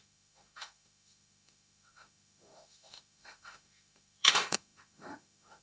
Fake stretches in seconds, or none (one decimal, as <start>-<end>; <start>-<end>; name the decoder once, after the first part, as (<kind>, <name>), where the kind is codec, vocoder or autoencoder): 0.0-5.6 (autoencoder, DAC-VAE)